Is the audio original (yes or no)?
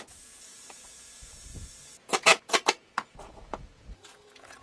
no